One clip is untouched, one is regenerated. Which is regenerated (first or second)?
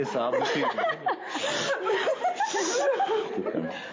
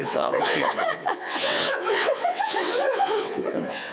second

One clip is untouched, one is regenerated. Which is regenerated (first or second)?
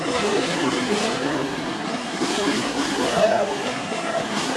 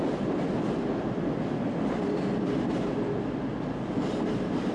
first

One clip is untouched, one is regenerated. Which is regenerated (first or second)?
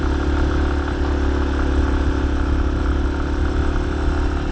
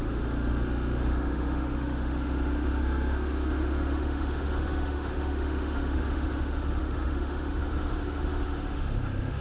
second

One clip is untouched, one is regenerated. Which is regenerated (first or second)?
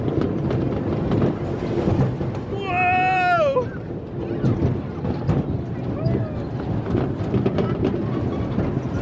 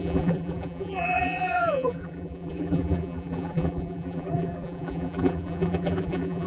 second